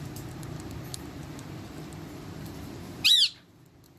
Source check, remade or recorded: recorded